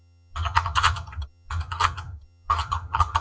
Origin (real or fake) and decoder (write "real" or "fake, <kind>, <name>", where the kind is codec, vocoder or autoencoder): fake, vocoder, HiFi-GAN